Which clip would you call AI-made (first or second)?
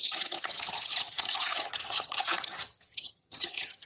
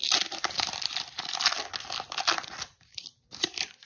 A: first